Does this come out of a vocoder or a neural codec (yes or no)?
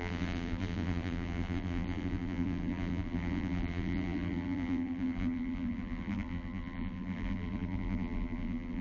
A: yes